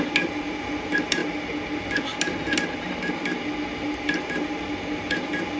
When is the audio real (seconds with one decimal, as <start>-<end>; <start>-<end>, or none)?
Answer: 0.0-5.6